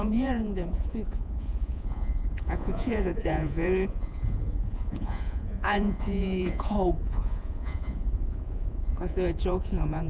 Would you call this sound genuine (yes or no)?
no